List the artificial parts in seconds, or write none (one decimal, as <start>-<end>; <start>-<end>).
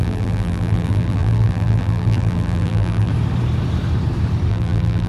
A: 0.0-3.1; 4.5-5.1